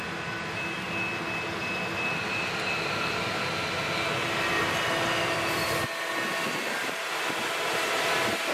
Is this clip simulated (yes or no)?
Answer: no